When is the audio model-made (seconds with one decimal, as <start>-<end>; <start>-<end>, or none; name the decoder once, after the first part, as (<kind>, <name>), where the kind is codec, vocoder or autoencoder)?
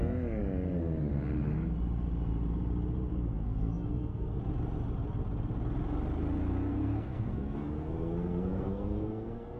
3.1-4.4 (codec, SNAC); 6.7-9.6